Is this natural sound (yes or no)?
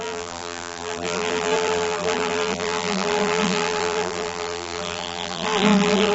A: no